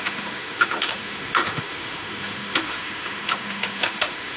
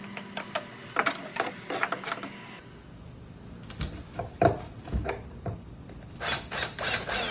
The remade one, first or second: first